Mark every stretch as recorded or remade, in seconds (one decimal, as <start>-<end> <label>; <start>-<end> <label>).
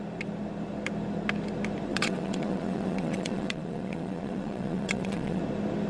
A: 0.0-1.9 recorded; 1.9-5.4 remade; 5.4-5.9 recorded